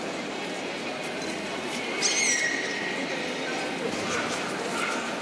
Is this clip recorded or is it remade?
recorded